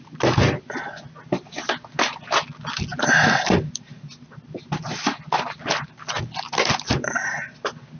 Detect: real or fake real